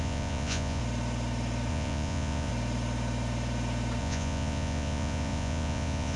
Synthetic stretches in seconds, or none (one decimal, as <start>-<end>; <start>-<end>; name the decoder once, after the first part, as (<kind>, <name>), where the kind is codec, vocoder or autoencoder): 0.0-0.8 (vocoder, Vocos); 1.7-2.5; 4.0-6.2